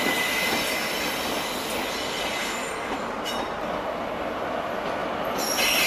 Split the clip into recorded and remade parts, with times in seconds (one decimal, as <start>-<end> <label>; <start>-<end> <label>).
0.0-5.9 recorded